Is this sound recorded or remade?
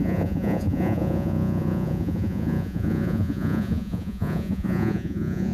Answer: remade